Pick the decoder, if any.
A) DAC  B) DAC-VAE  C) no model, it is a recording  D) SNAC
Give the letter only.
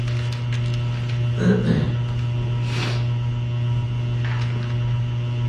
C